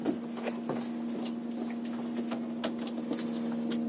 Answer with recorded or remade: recorded